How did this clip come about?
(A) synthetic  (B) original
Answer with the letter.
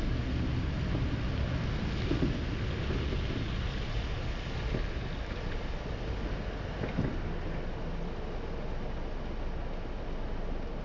B